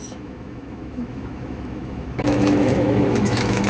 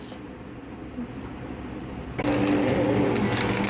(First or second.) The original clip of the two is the second